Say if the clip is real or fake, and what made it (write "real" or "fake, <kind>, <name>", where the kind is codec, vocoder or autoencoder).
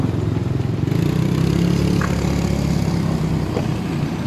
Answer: real